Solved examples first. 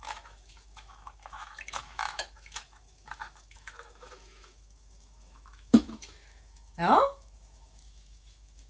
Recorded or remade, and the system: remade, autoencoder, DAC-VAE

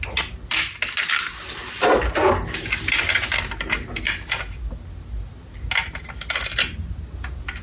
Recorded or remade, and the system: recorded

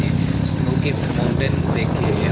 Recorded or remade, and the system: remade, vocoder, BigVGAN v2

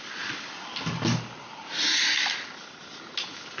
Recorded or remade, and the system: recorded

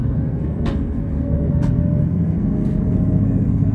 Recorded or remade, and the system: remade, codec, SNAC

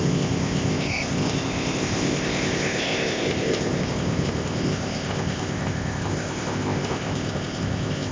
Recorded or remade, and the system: remade, codec, ZipCodec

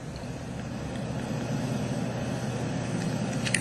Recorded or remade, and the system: recorded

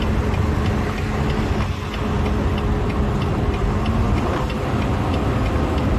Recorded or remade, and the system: recorded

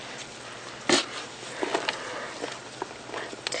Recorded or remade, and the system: recorded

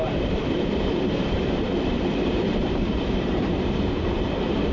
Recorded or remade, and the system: remade, vocoder, BigVGAN v2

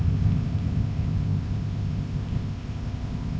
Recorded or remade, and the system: remade, codec, ZipCodec